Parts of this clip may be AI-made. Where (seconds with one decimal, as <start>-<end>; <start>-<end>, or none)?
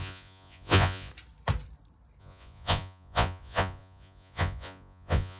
0.0-1.1; 2.2-5.4